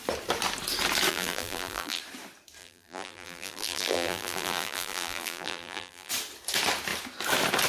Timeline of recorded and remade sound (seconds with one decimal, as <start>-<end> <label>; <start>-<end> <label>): 0.0-1.1 recorded; 1.1-2.0 remade; 2.0-2.6 recorded; 2.6-6.1 remade; 6.1-7.7 recorded

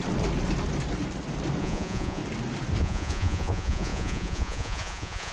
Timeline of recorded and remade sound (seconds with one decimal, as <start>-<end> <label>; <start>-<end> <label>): 0.0-1.6 recorded; 1.6-2.2 remade; 2.2-2.8 recorded; 2.8-5.3 remade

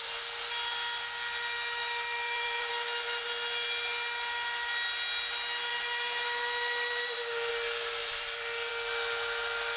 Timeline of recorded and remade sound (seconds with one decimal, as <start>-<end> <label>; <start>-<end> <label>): 0.0-1.8 recorded; 1.8-2.7 remade; 2.7-5.7 recorded; 5.7-7.5 remade; 7.5-8.0 recorded; 8.0-8.7 remade; 8.7-9.8 recorded

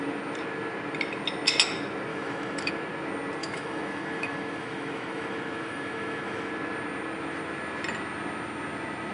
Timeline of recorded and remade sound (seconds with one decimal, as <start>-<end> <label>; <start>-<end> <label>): 0.0-2.1 recorded; 2.1-2.7 remade; 2.7-3.4 recorded; 3.4-6.5 remade; 6.5-9.1 recorded

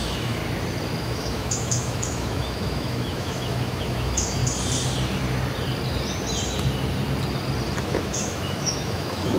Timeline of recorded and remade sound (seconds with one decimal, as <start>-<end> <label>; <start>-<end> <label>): 0.0-0.4 remade; 0.4-1.0 recorded; 1.0-4.4 remade; 4.4-7.8 recorded; 7.8-9.4 remade